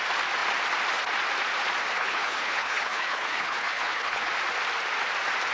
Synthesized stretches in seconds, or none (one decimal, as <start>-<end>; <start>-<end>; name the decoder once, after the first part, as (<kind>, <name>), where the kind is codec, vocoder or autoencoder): 2.0-4.3 (codec, HILCodec)